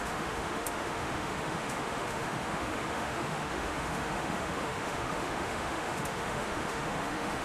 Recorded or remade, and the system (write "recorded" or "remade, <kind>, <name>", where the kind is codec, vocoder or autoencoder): remade, autoencoder, DAC-VAE